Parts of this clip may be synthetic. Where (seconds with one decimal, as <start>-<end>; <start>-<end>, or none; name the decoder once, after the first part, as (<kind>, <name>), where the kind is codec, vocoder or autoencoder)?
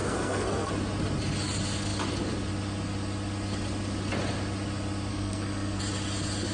0.0-0.7 (codec, SNAC); 5.1-5.8